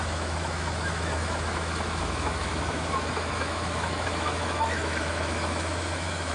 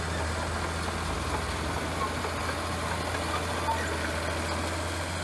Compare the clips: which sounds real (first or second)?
second